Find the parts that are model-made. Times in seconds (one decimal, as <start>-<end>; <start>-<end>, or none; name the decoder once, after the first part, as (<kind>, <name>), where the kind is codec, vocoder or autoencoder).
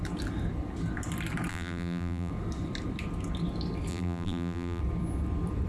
1.5-2.3 (vocoder, BigVGAN v2); 3.9-4.8